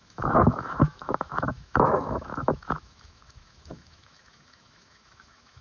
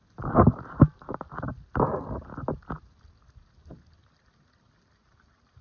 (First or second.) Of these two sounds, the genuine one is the second